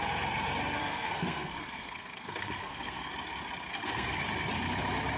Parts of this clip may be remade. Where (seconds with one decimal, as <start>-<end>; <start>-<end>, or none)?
0.8-3.1; 3.7-4.2